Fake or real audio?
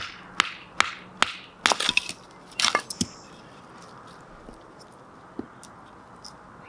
real